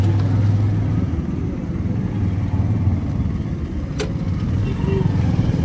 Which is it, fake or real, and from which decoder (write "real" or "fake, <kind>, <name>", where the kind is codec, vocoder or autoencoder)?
real